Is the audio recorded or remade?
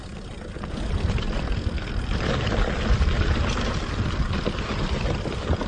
recorded